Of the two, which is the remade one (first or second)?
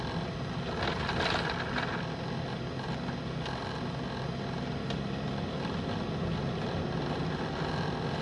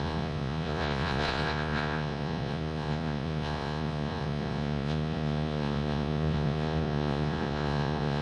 second